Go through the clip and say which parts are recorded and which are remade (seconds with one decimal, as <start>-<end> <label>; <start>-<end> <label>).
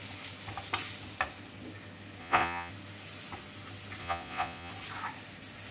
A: 0.0-2.2 recorded; 2.2-2.7 remade; 2.7-4.0 recorded; 4.0-4.7 remade; 4.7-5.7 recorded